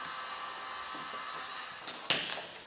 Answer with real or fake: real